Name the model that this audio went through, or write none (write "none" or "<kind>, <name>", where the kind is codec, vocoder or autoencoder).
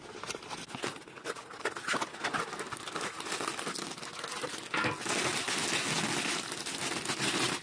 none